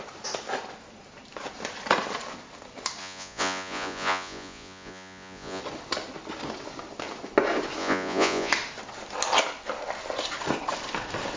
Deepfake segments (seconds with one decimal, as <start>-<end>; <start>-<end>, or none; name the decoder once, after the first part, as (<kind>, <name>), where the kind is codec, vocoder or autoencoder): 3.0-5.6 (vocoder, Vocos); 7.8-8.5

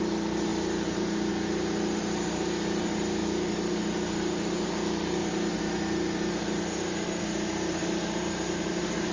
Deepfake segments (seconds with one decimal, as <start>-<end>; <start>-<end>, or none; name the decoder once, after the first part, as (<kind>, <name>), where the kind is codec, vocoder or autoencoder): none

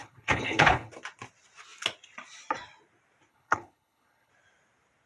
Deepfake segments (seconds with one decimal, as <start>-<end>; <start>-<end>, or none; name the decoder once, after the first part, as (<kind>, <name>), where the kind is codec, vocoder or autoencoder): 0.0-0.9 (codec, HILCodec); 3.3-4.3

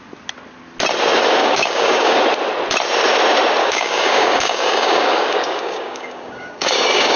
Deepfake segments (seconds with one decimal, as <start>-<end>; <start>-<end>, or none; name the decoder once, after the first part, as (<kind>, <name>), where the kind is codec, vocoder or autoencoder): 1.4-2.2 (codec, DAC); 3.6-7.2

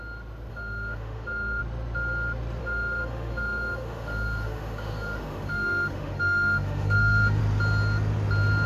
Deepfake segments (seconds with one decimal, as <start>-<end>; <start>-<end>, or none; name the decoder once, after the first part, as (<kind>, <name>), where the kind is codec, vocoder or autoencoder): 0.5-1.6 (autoencoder, DAC-VAE); 2.6-7.4

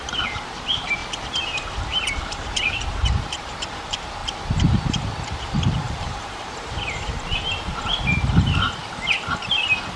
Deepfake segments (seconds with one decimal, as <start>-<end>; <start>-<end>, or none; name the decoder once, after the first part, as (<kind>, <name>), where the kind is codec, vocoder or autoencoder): 0.0-1.0 (vocoder, BigVGAN v2); 1.8-8.8

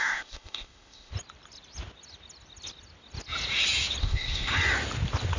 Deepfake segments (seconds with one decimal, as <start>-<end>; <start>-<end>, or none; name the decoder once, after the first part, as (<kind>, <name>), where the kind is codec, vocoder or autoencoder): 0.0-1.1 (codec, ZipCodec); 4.0-4.5